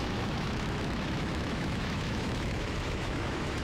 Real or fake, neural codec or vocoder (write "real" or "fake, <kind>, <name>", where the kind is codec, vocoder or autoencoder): fake, autoencoder, DAC-VAE